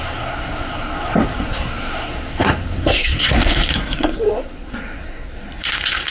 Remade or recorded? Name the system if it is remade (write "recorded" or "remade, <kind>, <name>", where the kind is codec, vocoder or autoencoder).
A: remade, codec, SNAC